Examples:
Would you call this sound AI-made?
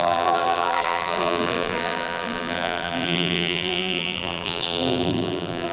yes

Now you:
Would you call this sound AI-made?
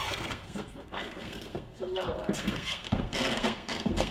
yes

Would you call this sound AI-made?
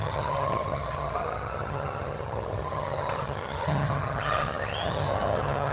yes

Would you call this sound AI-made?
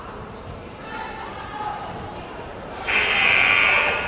yes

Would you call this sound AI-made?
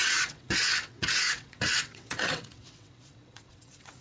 yes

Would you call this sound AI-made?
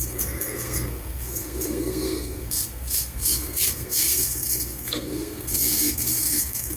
yes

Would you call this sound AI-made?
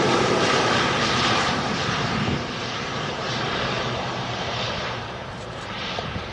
yes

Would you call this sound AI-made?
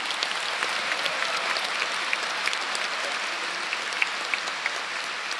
no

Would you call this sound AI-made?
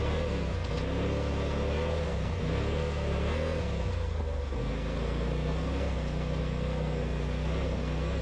yes